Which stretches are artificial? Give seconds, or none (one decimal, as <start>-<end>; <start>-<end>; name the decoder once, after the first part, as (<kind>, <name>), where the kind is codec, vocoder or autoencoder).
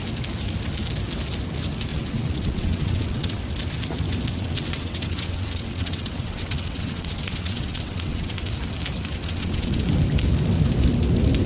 1.9-3.4 (vocoder, WaveNeXt); 4.3-8.5; 9.1-9.8